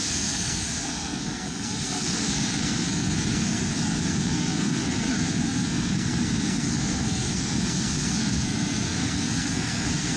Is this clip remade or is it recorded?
remade